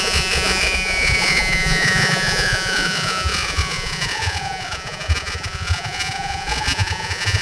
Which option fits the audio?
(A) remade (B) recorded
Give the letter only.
A